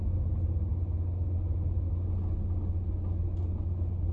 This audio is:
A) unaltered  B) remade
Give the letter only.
A